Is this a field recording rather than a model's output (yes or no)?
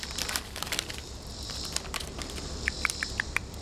no